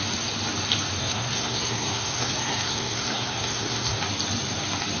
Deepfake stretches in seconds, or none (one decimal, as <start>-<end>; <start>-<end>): 1.0-4.0